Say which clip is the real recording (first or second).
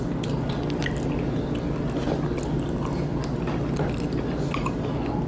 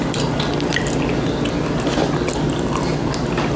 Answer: first